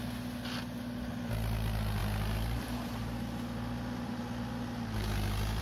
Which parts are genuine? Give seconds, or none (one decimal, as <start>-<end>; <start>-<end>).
0.0-5.6